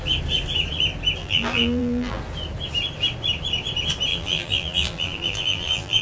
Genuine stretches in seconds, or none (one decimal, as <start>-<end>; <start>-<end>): 0.0-1.2; 2.2-4.1